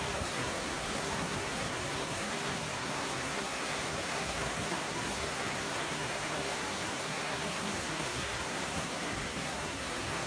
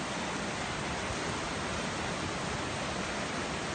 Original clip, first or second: second